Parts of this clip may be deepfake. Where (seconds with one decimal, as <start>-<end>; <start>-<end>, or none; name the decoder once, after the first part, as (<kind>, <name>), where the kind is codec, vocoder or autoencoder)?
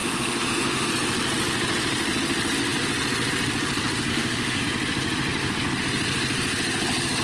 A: 0.0-0.9 (autoencoder, DAC-VAE); 4.1-4.6